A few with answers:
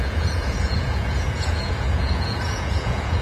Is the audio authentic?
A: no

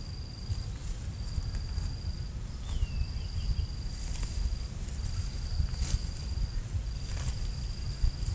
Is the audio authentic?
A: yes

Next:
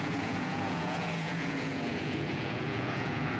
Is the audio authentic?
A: no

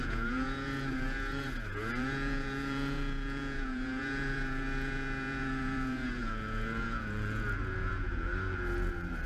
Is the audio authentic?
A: no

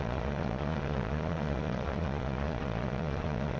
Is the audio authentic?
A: no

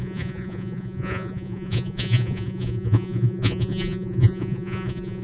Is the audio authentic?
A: no